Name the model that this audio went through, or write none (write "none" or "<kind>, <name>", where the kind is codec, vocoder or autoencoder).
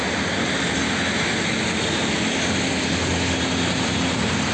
none